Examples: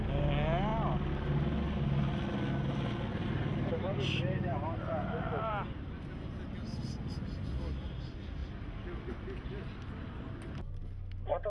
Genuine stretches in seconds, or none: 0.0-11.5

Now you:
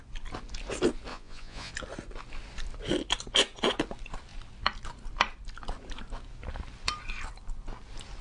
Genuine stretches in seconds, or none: 0.0-1.1; 1.7-8.2

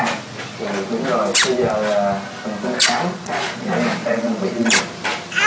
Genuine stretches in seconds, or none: 0.0-2.8; 3.6-4.0; 4.8-5.5

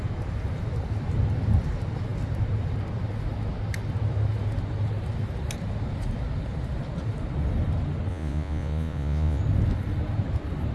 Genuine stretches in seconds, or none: 0.0-8.1; 9.4-10.7

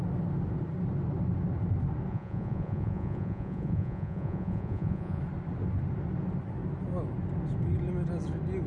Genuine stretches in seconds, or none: 0.0-2.1; 5.2-8.7

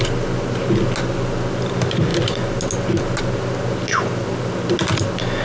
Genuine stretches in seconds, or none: 0.0-5.4

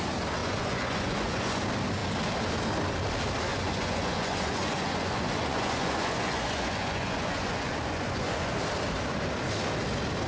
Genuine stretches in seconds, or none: 0.0-0.4; 1.6-3.5; 8.6-10.3

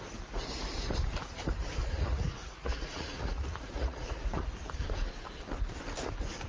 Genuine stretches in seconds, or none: 0.0-1.8; 4.5-6.5